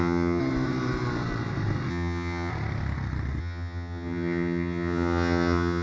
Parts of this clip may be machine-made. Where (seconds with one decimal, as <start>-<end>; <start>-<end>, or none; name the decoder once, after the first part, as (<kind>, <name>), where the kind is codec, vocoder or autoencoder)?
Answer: 0.0-0.4 (vocoder, HiFi-GAN); 1.9-2.5; 3.4-5.8